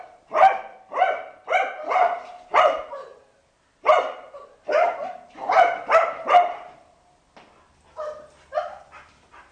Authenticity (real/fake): fake